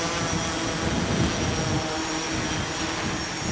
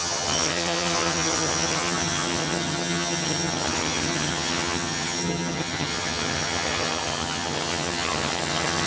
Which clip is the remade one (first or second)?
second